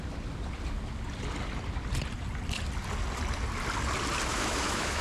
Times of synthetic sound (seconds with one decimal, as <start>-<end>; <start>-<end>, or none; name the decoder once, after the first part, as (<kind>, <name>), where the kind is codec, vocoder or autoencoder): 4.3-5.0 (autoencoder, DAC-VAE)